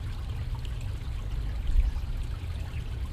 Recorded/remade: recorded